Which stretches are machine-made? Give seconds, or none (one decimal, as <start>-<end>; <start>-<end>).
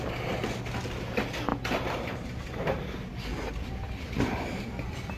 none